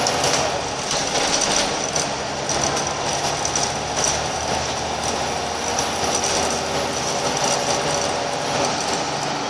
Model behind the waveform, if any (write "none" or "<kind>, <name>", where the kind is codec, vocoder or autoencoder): none